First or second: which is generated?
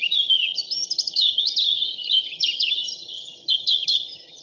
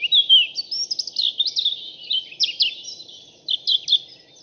first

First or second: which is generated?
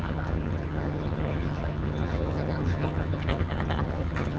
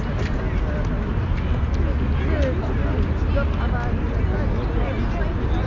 first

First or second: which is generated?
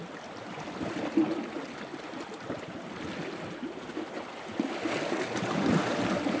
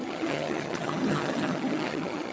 second